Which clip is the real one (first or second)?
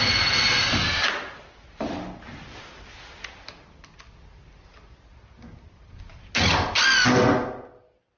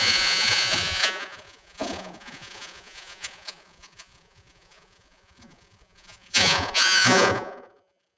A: first